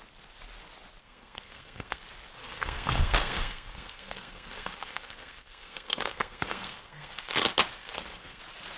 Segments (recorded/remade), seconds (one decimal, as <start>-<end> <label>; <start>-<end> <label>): 0.0-1.0 recorded; 1.0-2.0 remade; 2.0-2.4 recorded; 2.4-7.3 remade; 7.3-7.8 recorded; 7.8-8.4 remade; 8.4-8.8 recorded

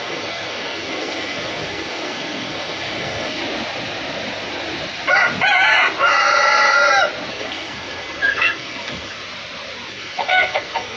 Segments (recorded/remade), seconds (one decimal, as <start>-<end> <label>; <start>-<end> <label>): 0.0-3.4 remade; 3.4-7.3 recorded; 7.3-9.2 remade; 9.2-9.9 recorded; 9.9-11.0 remade

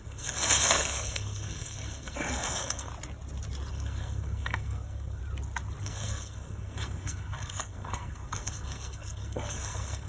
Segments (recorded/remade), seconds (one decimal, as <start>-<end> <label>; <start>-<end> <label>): 0.0-2.9 remade; 2.9-3.7 recorded; 3.7-5.2 remade; 5.2-5.8 recorded; 5.8-10.1 remade

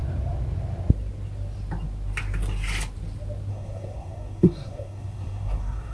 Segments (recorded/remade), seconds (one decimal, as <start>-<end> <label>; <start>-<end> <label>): 0.0-3.5 recorded; 3.5-5.9 remade

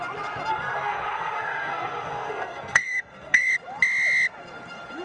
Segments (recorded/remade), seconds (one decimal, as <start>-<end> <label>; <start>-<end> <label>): 0.0-0.5 recorded; 0.5-3.5 remade; 3.5-5.0 recorded

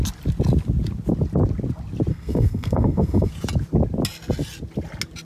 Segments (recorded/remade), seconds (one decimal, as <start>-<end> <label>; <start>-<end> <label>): 0.0-2.1 recorded; 2.1-3.3 remade; 3.3-5.2 recorded